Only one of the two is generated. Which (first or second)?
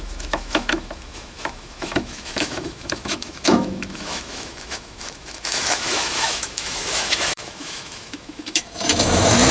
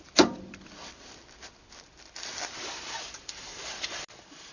first